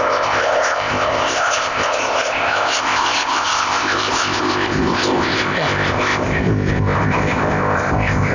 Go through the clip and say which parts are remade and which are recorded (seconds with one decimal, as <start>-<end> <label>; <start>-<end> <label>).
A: 0.0-8.3 remade